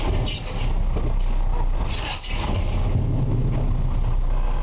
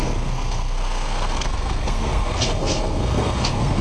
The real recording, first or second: first